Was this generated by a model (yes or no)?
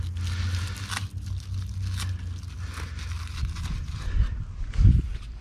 no